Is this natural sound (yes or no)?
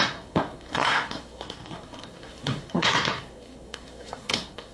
no